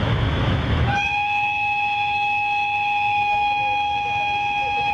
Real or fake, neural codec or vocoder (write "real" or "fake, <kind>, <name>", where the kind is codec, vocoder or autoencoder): fake, autoencoder, DAC-VAE